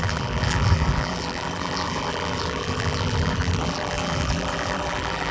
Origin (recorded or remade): remade